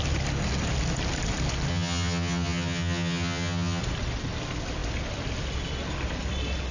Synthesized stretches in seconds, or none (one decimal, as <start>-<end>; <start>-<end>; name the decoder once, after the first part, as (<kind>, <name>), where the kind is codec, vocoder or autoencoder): 1.7-3.8 (vocoder, HiFi-GAN)